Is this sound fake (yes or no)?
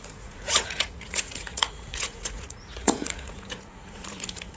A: yes